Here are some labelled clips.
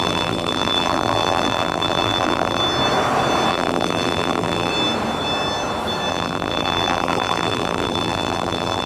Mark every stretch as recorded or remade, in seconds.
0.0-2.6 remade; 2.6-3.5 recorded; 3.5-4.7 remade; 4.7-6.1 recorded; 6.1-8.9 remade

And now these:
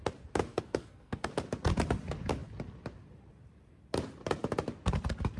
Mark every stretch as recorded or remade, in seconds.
0.0-0.5 recorded; 0.5-1.3 remade; 1.3-5.4 recorded

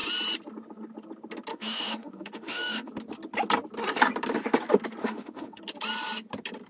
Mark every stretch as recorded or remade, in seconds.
0.0-1.5 recorded; 1.5-2.9 remade; 2.9-5.0 recorded; 5.0-5.6 remade; 5.6-6.7 recorded

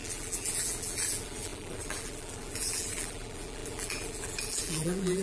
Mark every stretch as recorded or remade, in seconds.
0.0-5.2 remade

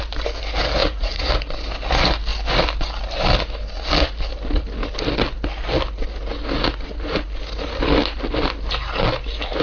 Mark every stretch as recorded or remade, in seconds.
0.0-0.8 recorded; 0.8-1.3 remade; 1.3-9.6 recorded

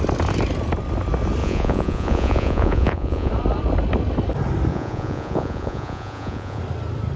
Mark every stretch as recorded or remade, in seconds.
0.0-1.4 recorded; 1.4-3.3 remade; 3.3-4.7 recorded; 4.7-6.6 remade; 6.6-7.2 recorded

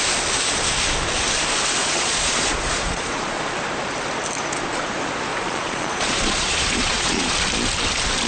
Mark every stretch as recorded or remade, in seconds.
0.0-1.8 recorded; 1.8-3.4 remade; 3.4-5.3 recorded; 5.3-7.3 remade; 7.3-8.3 recorded

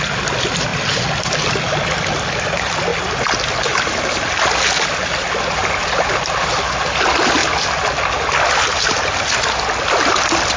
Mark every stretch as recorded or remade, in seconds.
0.0-10.6 recorded